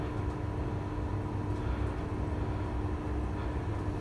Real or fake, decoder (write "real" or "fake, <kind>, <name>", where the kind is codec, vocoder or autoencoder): real